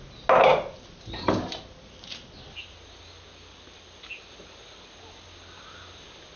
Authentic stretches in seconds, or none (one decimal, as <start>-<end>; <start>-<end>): 0.0-6.4